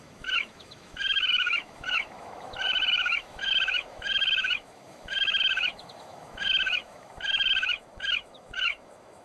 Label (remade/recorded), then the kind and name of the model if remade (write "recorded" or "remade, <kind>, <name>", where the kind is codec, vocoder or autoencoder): remade, autoencoder, DAC-VAE